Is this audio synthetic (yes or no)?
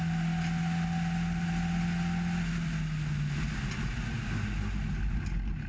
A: no